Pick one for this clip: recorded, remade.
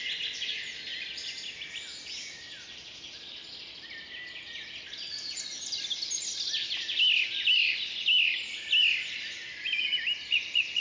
recorded